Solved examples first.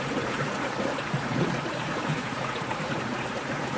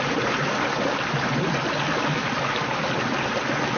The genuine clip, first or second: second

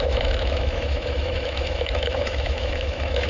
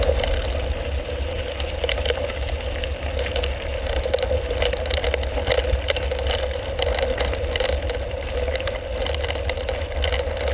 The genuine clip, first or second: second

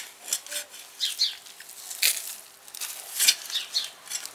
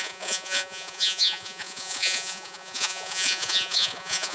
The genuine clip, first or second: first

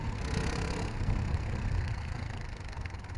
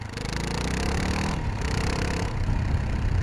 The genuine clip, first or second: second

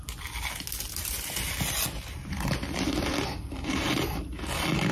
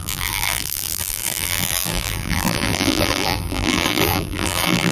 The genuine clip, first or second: first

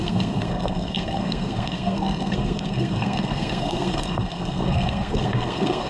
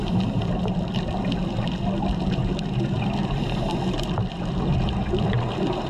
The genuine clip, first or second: second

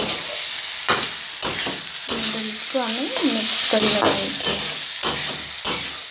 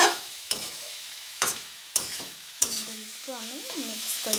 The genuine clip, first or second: first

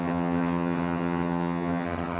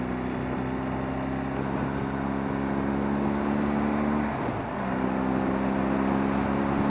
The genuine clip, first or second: second